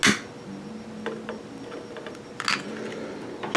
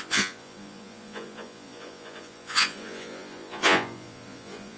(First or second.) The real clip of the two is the first